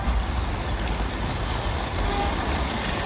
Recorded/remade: recorded